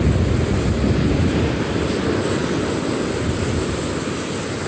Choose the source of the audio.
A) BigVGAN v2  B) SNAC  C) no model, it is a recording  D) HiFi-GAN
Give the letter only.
C